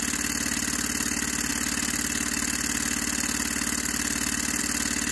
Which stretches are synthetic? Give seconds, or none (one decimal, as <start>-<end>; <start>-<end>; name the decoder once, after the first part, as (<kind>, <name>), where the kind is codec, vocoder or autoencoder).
none